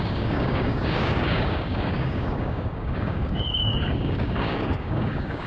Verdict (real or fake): fake